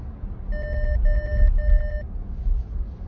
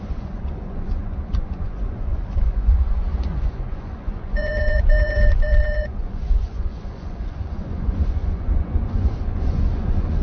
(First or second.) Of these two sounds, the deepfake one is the second